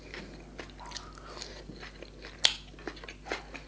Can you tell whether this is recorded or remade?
recorded